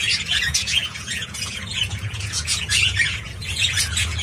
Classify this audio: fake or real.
fake